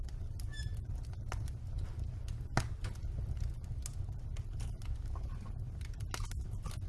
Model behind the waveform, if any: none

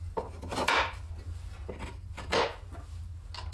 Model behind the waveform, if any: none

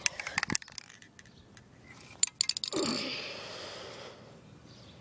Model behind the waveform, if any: none